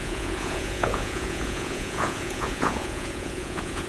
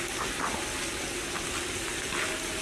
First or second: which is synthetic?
first